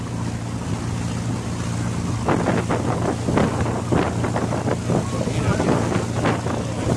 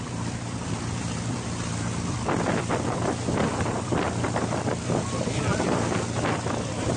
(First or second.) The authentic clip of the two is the first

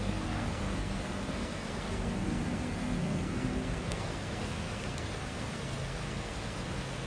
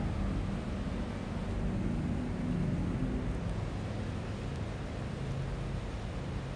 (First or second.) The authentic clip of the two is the second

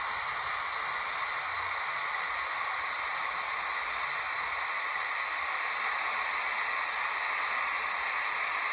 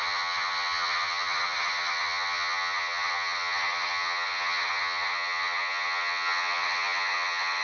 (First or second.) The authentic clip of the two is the first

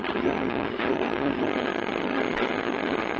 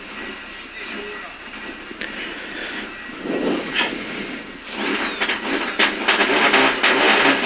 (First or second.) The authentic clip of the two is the second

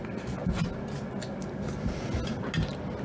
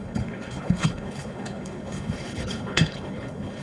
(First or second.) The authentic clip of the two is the first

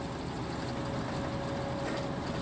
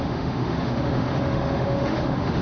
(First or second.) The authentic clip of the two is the first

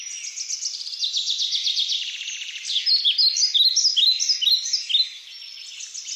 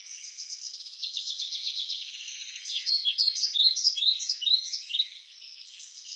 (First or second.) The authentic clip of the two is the first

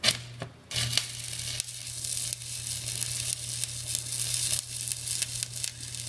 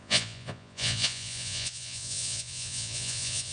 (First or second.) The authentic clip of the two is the first